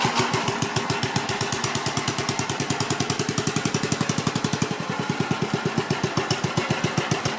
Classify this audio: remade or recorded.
recorded